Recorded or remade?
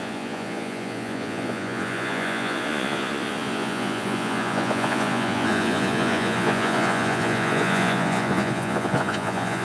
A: remade